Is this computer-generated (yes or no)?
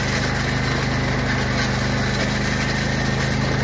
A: no